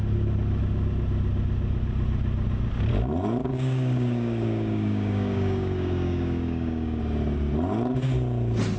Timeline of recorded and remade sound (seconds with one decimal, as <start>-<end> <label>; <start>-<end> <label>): 0.0-3.4 recorded; 3.4-7.0 remade; 7.0-8.8 recorded